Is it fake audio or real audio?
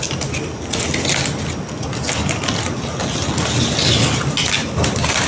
real